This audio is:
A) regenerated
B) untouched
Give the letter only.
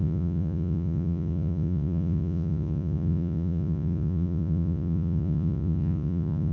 A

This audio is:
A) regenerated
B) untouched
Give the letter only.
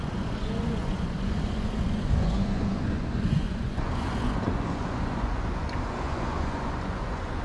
A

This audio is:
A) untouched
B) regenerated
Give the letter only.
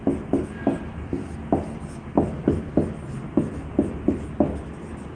A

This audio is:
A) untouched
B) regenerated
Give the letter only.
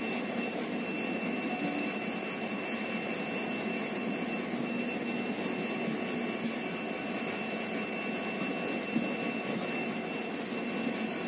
A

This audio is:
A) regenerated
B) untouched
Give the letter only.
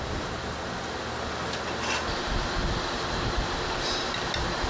B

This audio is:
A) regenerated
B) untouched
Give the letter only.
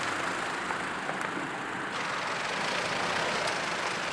B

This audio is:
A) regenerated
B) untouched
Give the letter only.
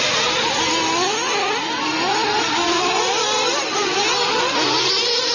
B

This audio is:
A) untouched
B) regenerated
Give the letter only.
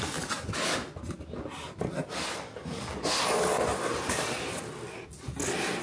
A